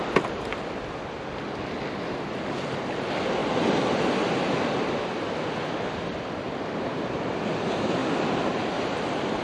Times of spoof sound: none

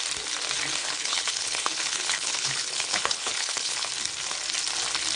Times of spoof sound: 0.8-3.9 (codec, HILCodec)

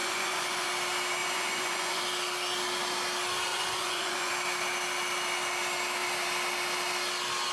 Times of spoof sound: 0.0-0.7 (vocoder, Vocos); 1.2-2.0; 3.5-4.3

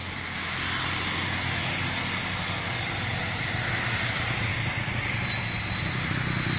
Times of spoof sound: 4.5-5.1 (codec, DAC)

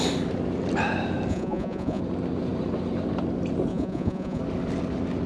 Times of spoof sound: 1.3-2.0 (vocoder, Vocos); 3.7-4.4

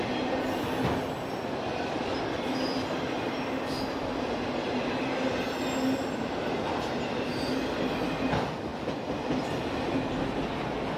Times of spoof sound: none

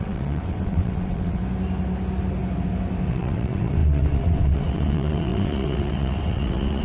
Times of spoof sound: 0.0-1.4 (vocoder, WaveNeXt); 3.1-6.8